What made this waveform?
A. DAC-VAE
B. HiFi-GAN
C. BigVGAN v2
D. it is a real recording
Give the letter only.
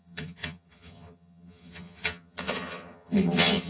B